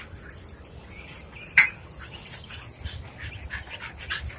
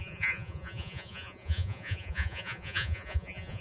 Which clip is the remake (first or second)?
second